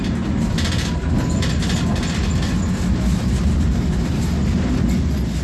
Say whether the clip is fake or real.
real